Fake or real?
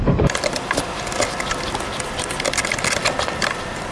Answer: fake